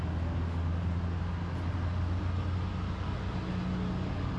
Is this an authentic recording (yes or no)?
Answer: yes